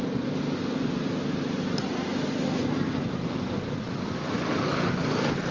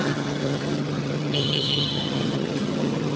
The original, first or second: first